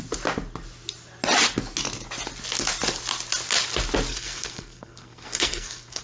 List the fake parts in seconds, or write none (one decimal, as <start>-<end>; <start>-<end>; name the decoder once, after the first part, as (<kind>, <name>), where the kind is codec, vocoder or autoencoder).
4.1-6.0 (codec, SNAC)